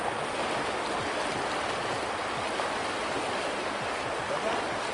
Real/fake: real